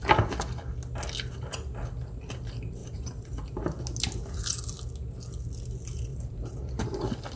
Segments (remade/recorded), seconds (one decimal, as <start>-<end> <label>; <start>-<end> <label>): 0.0-2.8 recorded; 2.8-3.4 remade; 3.4-6.1 recorded; 6.1-7.0 remade; 7.0-7.4 recorded